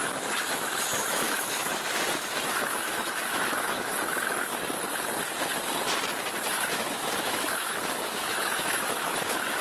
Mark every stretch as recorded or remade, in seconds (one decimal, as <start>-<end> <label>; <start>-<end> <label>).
0.0-4.5 remade; 4.5-6.5 recorded; 6.5-9.6 remade